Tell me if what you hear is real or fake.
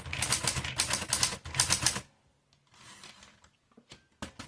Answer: real